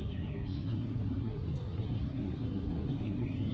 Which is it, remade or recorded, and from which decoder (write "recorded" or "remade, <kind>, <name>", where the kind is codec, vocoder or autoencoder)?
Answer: remade, codec, SNAC